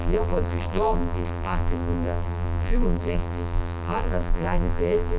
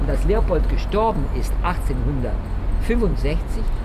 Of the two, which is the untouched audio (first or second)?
second